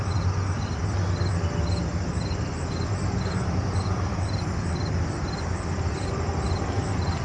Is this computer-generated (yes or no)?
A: no